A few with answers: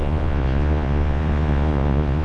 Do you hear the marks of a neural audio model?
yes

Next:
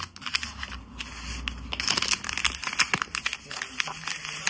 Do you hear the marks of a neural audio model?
no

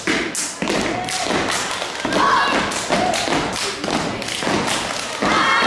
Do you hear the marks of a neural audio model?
no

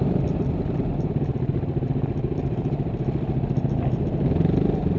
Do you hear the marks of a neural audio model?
no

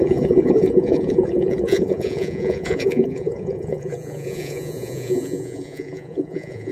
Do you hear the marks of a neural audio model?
yes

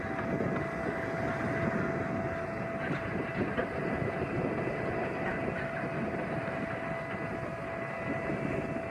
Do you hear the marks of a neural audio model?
no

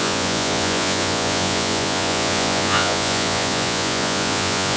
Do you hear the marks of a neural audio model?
yes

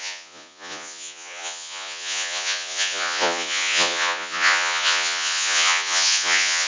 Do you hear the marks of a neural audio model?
yes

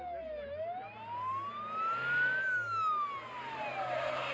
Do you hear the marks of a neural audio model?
no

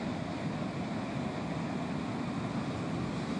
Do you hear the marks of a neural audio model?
no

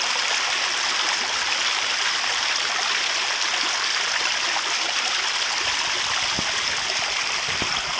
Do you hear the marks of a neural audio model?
no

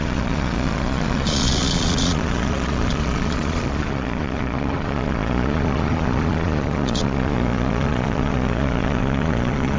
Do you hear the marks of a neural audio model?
yes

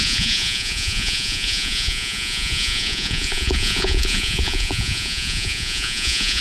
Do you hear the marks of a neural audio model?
yes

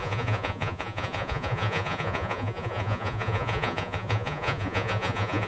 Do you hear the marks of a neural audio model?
yes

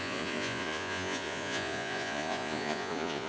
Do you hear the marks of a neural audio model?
yes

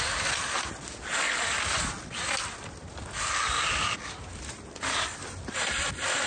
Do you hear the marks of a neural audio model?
no